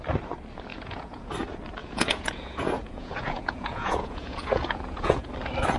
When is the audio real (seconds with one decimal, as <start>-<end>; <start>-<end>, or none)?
0.0-0.7; 1.3-1.8; 5.3-5.8